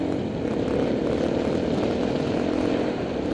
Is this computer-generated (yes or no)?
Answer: yes